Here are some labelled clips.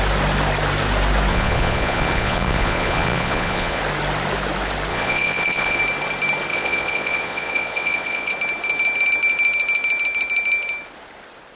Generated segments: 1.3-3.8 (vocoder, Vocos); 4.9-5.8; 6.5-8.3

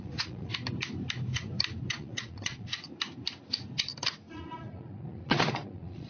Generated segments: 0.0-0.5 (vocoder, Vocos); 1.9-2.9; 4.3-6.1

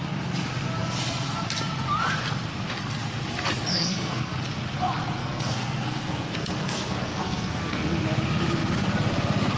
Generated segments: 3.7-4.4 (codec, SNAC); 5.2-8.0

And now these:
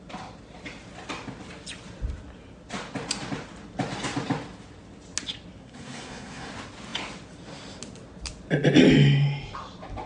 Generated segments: 5.6-6.5 (codec, SNAC)

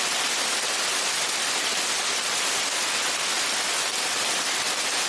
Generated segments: none

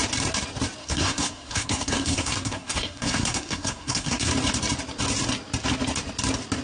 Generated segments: 0.8-4.3 (codec, SNAC)

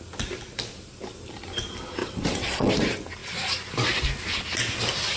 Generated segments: 2.0-2.7 (vocoder, WaveNeXt)